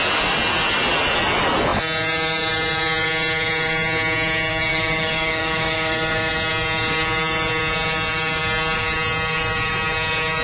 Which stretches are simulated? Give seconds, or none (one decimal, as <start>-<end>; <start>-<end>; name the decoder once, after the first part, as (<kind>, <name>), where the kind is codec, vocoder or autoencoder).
4.7-6.3 (codec, DAC)